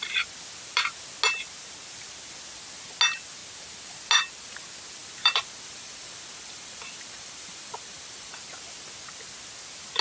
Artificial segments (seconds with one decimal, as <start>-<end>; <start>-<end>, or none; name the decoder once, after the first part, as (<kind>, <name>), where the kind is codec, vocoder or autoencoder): 5.0-8.3 (vocoder, BigVGAN v2)